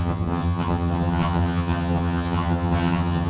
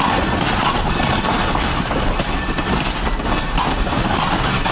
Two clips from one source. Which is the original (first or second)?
second